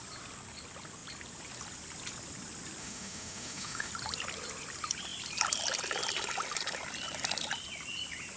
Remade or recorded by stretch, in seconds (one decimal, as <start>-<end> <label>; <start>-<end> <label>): 0.0-2.8 recorded; 2.8-3.9 remade; 3.9-8.4 recorded